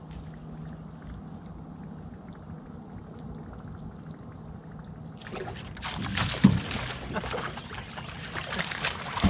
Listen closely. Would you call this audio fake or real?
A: real